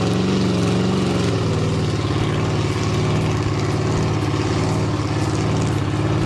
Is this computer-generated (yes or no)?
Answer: no